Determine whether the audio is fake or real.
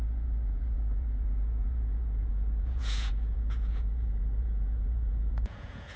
fake